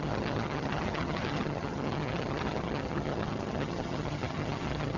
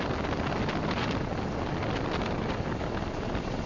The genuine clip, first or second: second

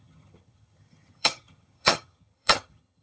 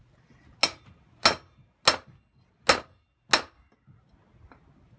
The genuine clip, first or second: second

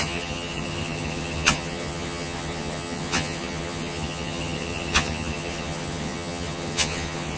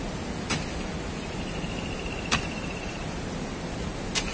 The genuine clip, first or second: second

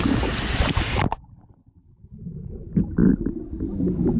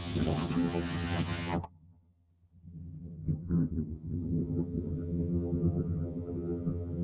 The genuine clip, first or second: first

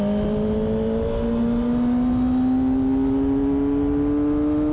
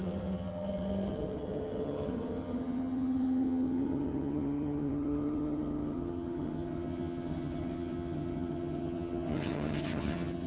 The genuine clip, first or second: first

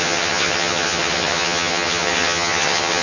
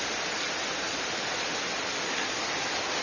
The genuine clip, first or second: second